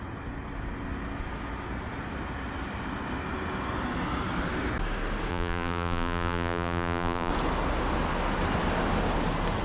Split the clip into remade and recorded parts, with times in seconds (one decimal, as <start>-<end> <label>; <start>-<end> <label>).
0.0-5.3 recorded; 5.3-7.3 remade; 7.3-9.6 recorded